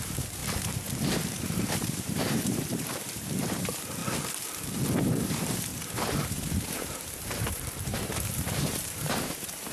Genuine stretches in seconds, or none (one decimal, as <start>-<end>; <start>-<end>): 4.0-5.0